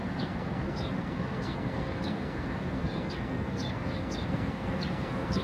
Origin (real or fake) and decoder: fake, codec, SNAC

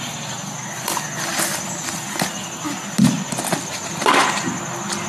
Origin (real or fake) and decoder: real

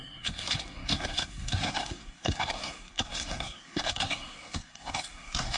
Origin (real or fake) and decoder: fake, codec, SNAC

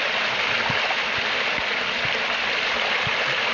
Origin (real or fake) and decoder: real